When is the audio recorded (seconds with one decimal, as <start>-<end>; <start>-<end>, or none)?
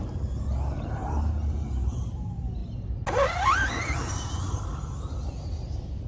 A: 0.0-6.1